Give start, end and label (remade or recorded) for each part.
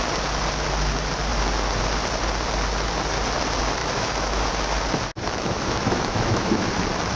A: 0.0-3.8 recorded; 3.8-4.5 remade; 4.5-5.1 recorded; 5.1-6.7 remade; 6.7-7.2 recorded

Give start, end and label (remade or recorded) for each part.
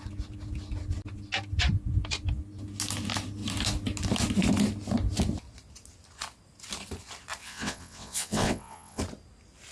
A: 0.0-7.4 recorded; 7.4-9.0 remade; 9.0-9.7 recorded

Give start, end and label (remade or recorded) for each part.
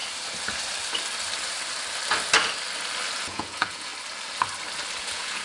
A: 0.0-3.2 recorded; 3.2-3.9 remade; 3.9-5.0 recorded; 5.0-5.4 remade